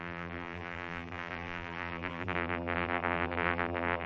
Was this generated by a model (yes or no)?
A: yes